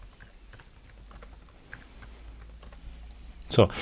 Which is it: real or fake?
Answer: real